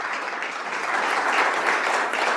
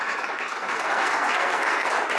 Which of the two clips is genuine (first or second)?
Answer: first